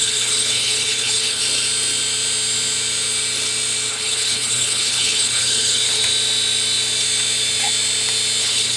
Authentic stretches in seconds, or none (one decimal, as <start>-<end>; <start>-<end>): 1.4-3.9; 6.0-8.4